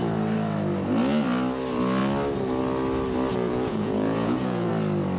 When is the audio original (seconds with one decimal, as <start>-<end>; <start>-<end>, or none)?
0.0-3.3; 4.7-5.2